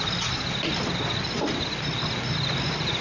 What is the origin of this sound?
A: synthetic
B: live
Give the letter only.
B